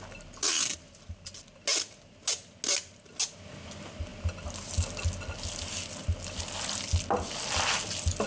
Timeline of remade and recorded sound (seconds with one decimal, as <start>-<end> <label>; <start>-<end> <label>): 0.0-8.3 recorded